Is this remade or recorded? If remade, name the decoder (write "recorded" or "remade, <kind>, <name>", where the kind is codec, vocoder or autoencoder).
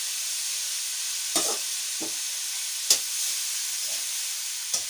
recorded